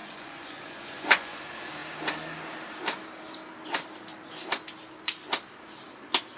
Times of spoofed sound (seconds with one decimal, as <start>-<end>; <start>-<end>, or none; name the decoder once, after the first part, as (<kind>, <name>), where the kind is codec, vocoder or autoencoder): 0.0-1.4 (vocoder, Vocos)